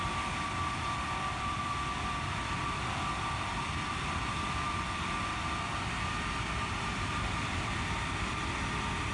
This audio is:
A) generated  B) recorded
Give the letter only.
A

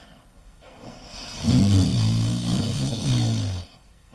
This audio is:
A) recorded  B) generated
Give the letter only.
B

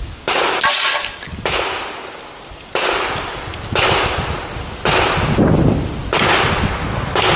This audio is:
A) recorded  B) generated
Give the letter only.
A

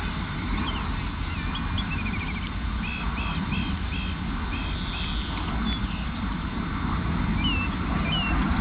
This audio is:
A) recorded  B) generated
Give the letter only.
A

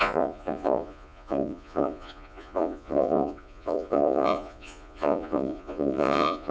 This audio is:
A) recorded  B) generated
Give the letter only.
B